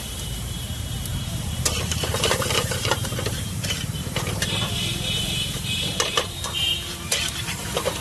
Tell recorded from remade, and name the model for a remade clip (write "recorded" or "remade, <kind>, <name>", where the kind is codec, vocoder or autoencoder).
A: remade, vocoder, BigVGAN v2